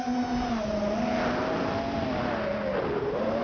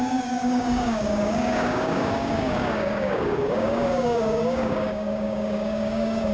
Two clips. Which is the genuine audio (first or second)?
first